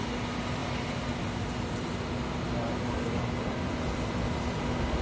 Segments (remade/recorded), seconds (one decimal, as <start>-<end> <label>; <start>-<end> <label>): 0.0-5.0 recorded